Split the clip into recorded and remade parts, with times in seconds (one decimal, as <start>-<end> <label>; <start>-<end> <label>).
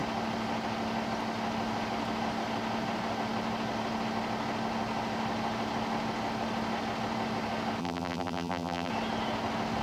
0.0-7.8 recorded; 7.8-8.9 remade; 8.9-9.8 recorded